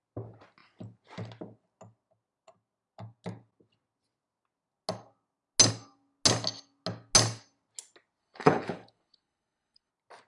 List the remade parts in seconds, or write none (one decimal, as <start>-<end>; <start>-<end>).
8.2-9.9